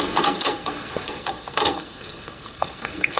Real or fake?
fake